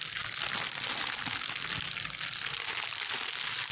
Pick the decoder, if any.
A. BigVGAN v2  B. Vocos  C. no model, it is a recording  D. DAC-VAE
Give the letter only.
C